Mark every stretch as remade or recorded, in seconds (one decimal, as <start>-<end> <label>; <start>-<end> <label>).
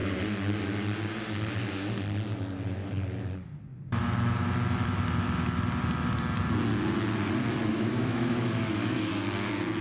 0.0-7.7 recorded; 7.7-9.1 remade; 9.1-9.8 recorded